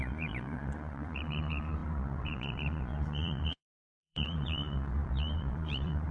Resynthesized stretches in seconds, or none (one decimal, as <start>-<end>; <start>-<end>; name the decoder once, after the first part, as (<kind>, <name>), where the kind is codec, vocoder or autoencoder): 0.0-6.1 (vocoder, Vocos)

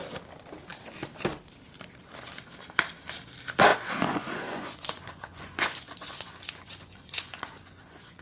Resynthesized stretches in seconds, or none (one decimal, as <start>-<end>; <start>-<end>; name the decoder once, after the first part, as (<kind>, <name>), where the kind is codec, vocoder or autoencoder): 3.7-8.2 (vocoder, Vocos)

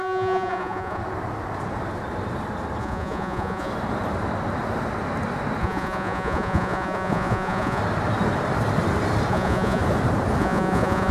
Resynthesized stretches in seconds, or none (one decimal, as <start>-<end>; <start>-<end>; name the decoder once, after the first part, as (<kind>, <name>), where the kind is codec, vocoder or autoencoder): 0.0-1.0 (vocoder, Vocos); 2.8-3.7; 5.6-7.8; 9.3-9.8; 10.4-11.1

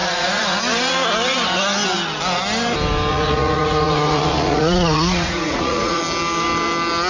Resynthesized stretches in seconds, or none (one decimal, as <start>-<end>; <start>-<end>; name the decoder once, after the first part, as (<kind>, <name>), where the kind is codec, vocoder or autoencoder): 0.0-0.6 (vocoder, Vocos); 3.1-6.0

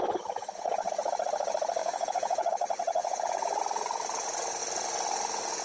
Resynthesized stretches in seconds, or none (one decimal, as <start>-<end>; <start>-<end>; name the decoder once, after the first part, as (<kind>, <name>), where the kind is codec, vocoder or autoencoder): 1.8-2.5 (vocoder, Vocos); 3.0-3.6